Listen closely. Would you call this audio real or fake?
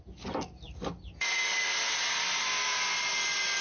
real